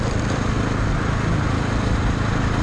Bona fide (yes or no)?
yes